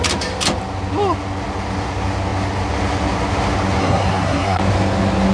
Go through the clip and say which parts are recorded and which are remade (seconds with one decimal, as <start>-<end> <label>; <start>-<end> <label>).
0.0-3.8 recorded; 3.8-4.6 remade; 4.6-5.3 recorded